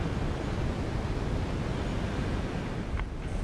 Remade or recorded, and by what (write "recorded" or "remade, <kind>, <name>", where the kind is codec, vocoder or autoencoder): recorded